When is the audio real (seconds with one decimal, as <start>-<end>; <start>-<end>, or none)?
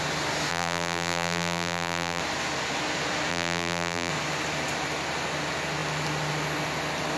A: 0.0-0.5; 2.2-3.3; 4.1-7.2